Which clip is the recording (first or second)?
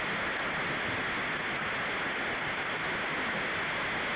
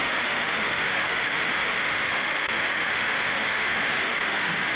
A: first